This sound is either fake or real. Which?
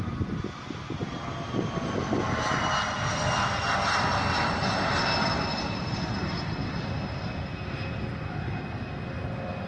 real